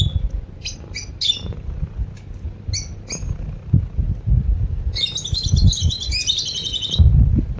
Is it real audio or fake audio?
real